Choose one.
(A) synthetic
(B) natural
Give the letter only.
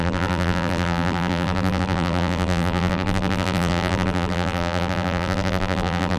A